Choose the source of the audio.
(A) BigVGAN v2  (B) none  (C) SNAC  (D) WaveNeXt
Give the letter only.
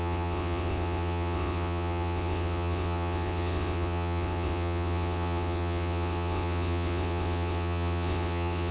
D